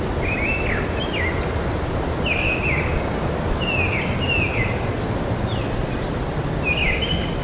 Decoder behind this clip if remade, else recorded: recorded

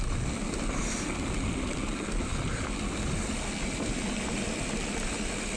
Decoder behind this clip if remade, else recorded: recorded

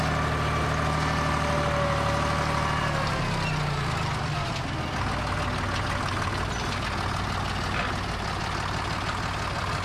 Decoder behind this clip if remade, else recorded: recorded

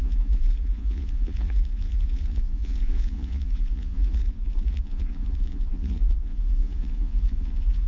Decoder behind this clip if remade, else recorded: remade, vocoder, Vocos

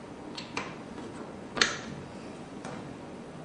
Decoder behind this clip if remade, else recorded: remade, vocoder, Vocos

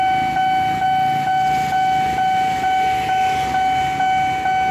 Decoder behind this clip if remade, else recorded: recorded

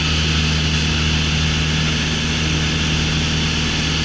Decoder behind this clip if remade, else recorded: recorded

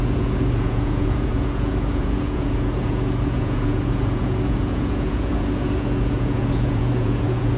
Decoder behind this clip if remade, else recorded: remade, vocoder, Vocos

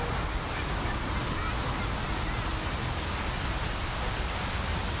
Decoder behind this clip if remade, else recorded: recorded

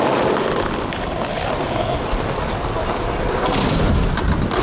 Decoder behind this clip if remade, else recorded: recorded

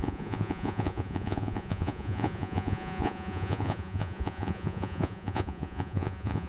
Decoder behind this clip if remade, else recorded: remade, vocoder, Vocos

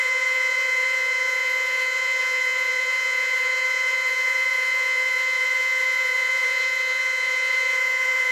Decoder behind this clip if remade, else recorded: remade, vocoder, Vocos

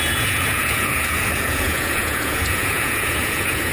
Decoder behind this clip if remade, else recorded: remade, vocoder, Vocos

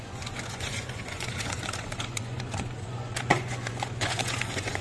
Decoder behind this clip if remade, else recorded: remade, vocoder, Vocos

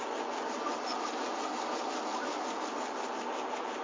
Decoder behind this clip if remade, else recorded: recorded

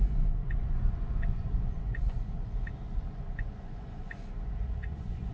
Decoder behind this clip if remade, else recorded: remade, vocoder, Vocos